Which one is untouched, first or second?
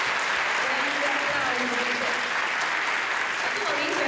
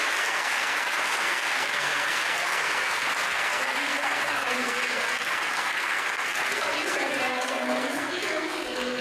first